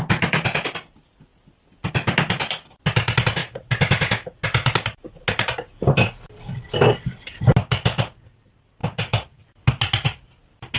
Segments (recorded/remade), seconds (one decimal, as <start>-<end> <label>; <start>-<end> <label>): 0.0-8.8 recorded; 8.8-9.4 remade; 9.4-10.8 recorded